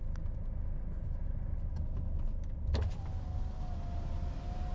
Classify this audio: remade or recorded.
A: recorded